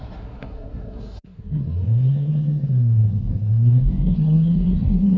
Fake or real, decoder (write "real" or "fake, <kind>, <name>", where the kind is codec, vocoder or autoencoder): fake, codec, SNAC